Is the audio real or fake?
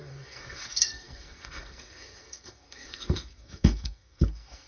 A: fake